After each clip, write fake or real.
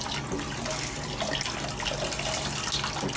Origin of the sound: real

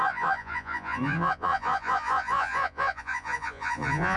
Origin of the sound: fake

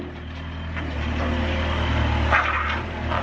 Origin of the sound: real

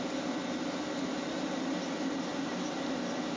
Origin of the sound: real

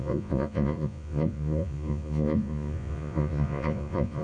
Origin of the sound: fake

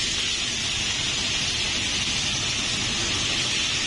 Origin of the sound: real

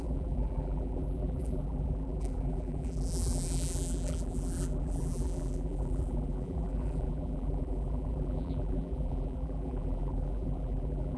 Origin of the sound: fake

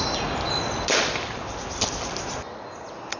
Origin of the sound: real